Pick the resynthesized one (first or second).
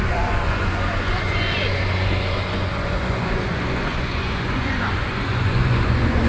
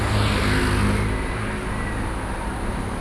first